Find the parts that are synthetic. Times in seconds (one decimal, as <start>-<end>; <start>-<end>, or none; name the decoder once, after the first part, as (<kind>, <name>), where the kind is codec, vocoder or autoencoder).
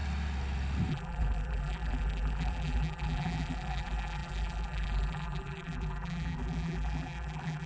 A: 0.9-7.7 (vocoder, BigVGAN v2)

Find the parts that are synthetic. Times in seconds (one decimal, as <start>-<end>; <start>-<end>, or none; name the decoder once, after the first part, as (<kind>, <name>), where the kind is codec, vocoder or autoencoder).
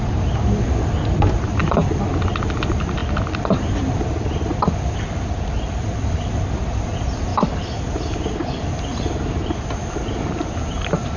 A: 1.6-2.2 (vocoder, BigVGAN v2); 3.0-6.5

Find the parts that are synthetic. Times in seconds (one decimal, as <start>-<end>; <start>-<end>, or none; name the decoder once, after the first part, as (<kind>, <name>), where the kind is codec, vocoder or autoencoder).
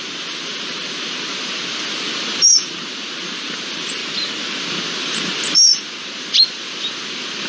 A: 0.0-4.0 (vocoder, BigVGAN v2); 4.6-7.5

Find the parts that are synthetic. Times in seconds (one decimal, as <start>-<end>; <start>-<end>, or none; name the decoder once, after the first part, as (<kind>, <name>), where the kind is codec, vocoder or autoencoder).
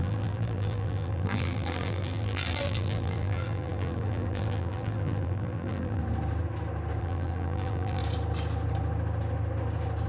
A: 0.0-6.0 (vocoder, BigVGAN v2); 7.0-8.0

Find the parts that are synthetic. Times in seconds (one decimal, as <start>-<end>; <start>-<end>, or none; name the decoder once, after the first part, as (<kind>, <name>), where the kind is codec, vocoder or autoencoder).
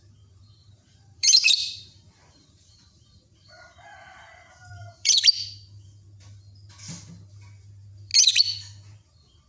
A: 0.6-5.1 (vocoder, BigVGAN v2)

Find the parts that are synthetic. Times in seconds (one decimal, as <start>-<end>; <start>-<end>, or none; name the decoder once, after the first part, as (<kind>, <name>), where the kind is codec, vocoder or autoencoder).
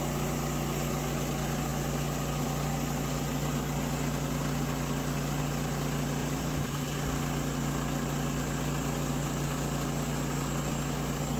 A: 6.2-6.7 (vocoder, BigVGAN v2)